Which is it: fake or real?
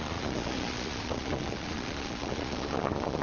fake